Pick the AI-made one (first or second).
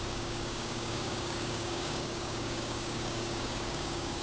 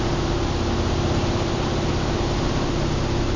first